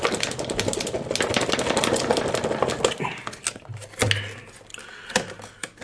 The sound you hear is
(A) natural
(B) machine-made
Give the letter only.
A